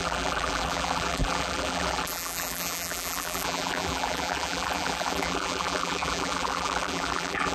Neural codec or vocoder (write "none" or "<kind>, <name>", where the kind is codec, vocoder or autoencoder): vocoder, BigVGAN v2